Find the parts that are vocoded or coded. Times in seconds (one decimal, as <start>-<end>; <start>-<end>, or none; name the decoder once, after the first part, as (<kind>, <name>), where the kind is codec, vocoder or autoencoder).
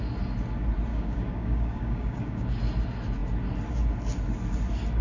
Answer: 0.9-2.6 (codec, DAC)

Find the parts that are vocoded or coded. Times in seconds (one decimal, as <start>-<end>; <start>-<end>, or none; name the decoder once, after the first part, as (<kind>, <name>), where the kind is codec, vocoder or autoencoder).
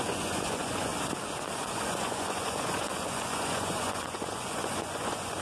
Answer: 0.0-0.9 (vocoder, Vocos); 1.5-5.4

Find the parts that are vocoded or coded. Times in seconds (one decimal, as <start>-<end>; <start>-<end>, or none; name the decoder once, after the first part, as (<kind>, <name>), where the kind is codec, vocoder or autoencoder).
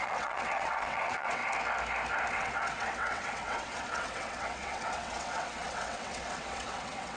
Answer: 0.0-1.4 (vocoder, WaveNeXt); 2.3-7.2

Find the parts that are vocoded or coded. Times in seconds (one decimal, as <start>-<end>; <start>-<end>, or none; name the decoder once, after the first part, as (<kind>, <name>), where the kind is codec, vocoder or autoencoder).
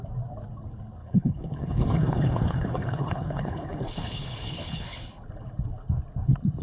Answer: 1.0-5.0 (codec, HILCodec)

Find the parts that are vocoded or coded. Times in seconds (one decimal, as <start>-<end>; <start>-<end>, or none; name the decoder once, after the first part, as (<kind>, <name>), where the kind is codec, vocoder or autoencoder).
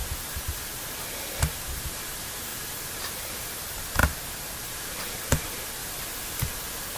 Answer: 1.6-4.0 (vocoder, BigVGAN v2); 4.6-5.8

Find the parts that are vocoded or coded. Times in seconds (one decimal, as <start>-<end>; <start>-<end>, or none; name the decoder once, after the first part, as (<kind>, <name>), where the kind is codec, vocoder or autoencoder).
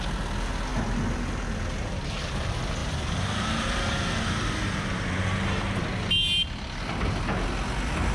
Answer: 2.8-3.9 (vocoder, BigVGAN v2)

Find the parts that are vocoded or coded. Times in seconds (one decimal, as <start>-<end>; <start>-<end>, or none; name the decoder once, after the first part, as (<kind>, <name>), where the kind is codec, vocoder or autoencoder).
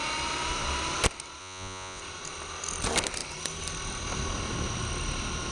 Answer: 1.4-2.0 (vocoder, Vocos)